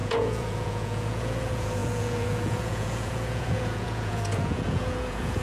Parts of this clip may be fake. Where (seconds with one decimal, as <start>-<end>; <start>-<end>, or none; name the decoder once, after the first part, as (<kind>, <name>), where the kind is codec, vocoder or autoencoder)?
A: 0.0-5.4 (vocoder, Vocos)